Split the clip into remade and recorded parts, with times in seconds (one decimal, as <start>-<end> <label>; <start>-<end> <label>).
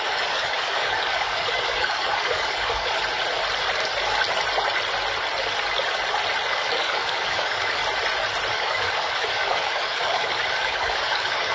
0.0-3.0 remade; 3.0-6.5 recorded; 6.5-7.8 remade; 7.8-8.5 recorded; 8.5-11.5 remade